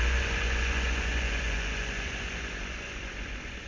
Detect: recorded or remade remade